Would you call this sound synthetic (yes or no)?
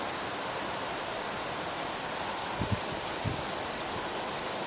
no